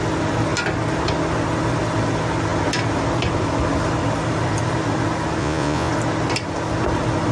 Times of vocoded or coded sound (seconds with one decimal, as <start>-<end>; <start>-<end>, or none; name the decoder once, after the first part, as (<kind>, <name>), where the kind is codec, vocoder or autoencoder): 5.4-5.9 (vocoder, Vocos)